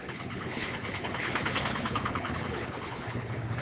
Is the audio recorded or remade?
remade